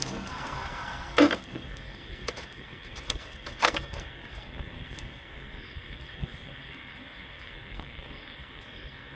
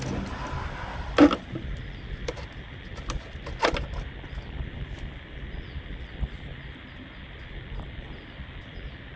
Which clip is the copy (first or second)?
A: first